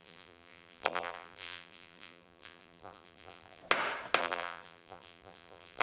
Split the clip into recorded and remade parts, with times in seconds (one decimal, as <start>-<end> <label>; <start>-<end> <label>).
0.0-3.6 remade; 3.6-4.2 recorded; 4.2-5.8 remade